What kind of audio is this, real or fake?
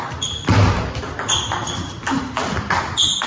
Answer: real